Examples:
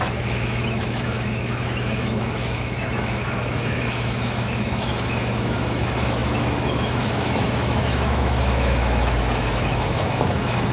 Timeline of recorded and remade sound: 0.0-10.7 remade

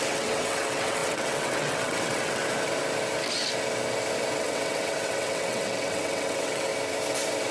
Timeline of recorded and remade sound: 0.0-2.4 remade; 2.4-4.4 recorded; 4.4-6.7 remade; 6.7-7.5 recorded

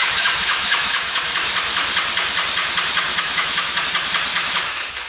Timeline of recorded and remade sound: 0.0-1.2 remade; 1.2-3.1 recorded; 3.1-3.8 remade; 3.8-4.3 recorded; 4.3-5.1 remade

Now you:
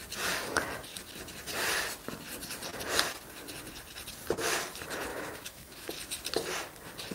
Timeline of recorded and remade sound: 0.0-5.1 recorded; 5.1-5.9 remade; 5.9-7.1 recorded

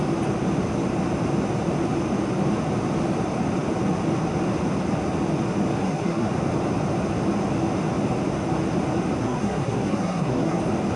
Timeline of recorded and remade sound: 0.0-5.8 recorded; 5.8-6.3 remade; 6.3-9.2 recorded; 9.2-10.6 remade; 10.6-11.0 recorded

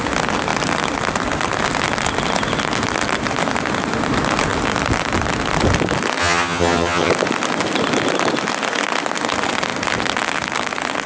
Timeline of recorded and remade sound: 0.0-6.2 recorded; 6.2-7.1 remade; 7.1-11.1 recorded